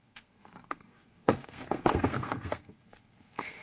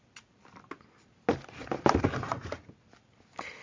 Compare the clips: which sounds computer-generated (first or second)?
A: first